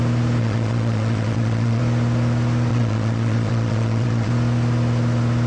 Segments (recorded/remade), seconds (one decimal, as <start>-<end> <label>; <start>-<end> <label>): 0.0-0.4 recorded; 0.4-1.8 remade; 1.8-2.7 recorded; 2.7-4.3 remade; 4.3-5.5 recorded